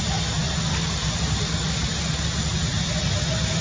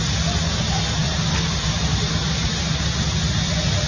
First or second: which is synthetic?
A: first